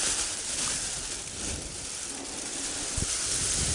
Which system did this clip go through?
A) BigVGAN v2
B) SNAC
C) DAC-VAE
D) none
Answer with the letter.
A